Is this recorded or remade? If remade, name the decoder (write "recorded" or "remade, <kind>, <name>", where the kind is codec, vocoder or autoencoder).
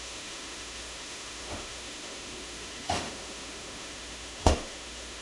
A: remade, autoencoder, DAC-VAE